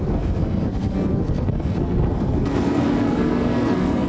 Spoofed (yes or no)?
yes